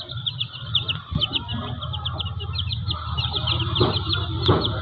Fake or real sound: real